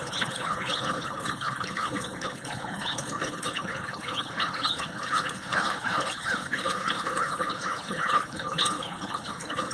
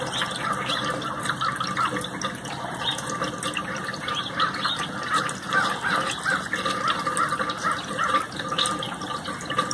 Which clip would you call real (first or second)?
second